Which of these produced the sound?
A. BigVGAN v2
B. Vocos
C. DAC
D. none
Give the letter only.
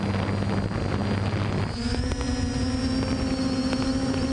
D